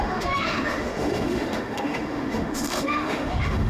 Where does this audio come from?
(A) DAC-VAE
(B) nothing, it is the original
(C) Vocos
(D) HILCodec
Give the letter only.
A